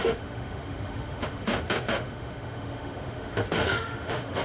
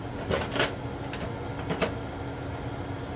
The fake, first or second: first